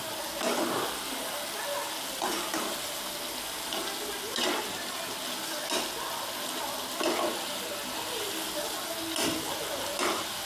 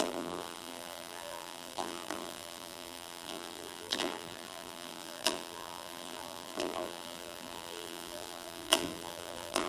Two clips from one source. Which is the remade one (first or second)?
second